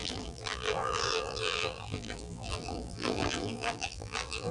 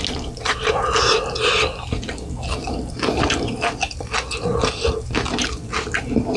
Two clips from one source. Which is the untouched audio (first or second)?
second